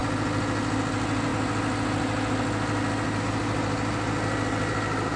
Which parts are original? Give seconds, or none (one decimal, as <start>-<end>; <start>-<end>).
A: 0.0-5.2